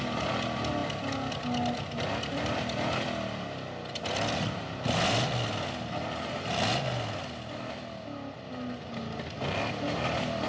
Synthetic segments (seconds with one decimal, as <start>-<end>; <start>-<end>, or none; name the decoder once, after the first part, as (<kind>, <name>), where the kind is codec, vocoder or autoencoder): none